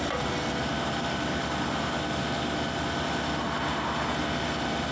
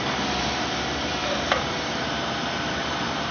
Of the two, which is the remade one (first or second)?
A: second